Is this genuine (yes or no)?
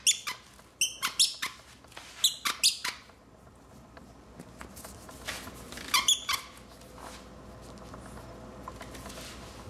yes